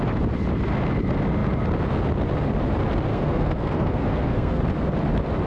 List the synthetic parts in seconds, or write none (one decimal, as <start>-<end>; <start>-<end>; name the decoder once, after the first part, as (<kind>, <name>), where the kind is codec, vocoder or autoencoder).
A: 3.1-4.6 (codec, SNAC)

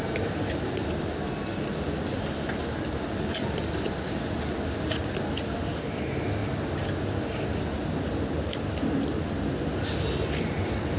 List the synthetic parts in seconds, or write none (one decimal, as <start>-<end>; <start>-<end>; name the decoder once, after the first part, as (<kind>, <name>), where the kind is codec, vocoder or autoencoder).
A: none

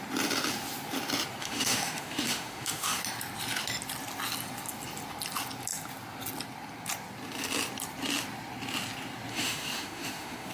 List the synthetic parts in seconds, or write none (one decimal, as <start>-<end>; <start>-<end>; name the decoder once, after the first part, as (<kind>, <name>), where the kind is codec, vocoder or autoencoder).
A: 1.4-3.0 (autoencoder, DAC-VAE); 9.3-10.5

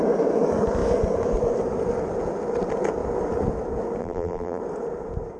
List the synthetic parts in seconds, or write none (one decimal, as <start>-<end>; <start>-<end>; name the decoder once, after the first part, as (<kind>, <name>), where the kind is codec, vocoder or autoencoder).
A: 4.0-4.6 (vocoder, BigVGAN v2)

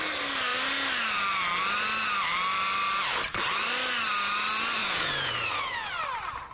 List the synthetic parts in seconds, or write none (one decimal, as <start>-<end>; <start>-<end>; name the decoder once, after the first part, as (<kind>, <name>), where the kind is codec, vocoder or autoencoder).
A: 4.8-5.9 (vocoder, Vocos)

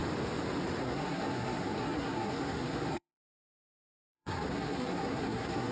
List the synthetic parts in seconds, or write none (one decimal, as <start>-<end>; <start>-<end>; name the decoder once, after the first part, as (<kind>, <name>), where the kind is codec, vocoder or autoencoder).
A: 0.8-5.7 (codec, SNAC)

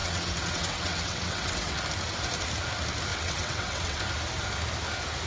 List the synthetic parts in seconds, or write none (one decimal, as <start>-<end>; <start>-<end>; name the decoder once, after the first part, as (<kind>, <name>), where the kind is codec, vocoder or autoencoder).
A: 0.0-1.8 (vocoder, WaveNeXt); 3.1-4.0

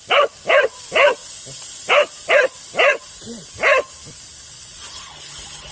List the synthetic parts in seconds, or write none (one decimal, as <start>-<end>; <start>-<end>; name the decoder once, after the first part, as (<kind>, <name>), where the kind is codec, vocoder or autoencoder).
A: none